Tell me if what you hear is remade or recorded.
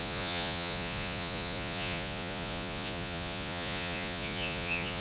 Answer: remade